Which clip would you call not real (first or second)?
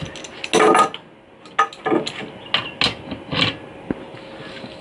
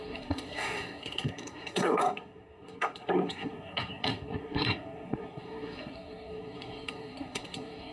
second